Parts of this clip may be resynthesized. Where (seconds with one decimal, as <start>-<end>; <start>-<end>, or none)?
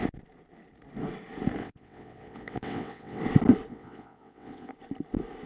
1.6-3.2; 3.7-4.7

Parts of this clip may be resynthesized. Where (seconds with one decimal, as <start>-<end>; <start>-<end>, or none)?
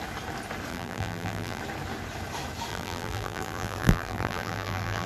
0.7-1.6; 2.7-5.1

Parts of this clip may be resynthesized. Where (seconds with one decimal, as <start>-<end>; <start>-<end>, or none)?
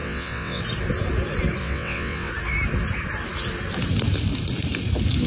0.0-0.6; 1.6-2.3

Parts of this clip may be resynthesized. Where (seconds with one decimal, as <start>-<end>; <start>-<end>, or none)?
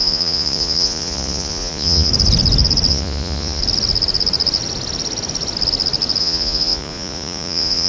0.0-2.1; 2.9-3.6; 6.2-7.9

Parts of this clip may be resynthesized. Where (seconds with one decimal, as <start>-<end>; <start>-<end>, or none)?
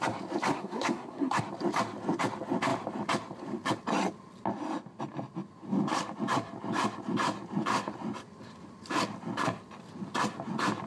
0.5-1.4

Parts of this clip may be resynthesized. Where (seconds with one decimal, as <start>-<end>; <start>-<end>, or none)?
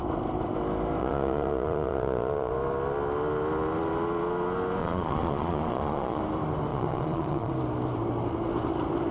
1.0-2.5; 4.8-6.2; 6.7-7.5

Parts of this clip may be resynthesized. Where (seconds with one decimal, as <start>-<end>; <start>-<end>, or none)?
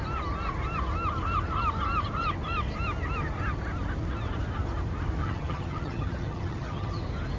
5.2-7.0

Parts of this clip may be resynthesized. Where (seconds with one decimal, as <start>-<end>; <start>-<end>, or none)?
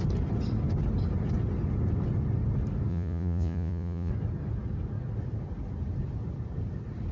2.9-4.1